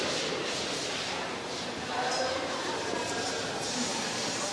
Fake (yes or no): yes